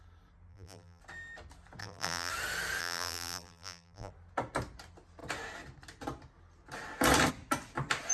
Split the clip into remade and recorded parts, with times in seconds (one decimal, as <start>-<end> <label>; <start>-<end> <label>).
0.0-0.5 recorded; 0.5-1.0 remade; 1.0-1.8 recorded; 1.8-2.3 remade; 2.3-2.8 recorded; 2.8-4.1 remade; 4.1-8.1 recorded